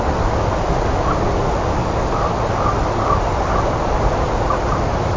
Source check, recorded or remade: recorded